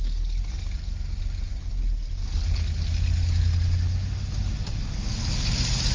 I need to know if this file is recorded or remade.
recorded